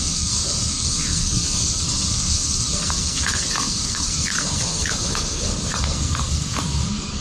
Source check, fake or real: fake